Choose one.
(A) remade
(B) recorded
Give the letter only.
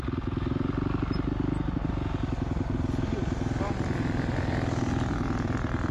B